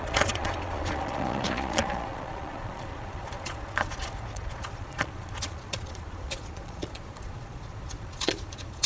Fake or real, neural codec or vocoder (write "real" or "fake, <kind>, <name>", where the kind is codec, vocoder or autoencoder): fake, vocoder, Vocos